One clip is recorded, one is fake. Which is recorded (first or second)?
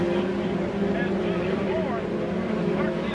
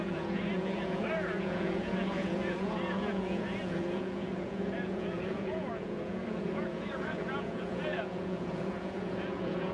first